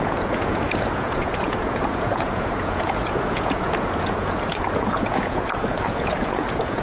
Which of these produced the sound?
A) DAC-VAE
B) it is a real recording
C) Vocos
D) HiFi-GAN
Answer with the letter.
C